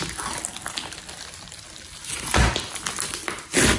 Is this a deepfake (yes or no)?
no